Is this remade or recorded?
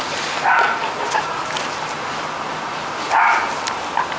recorded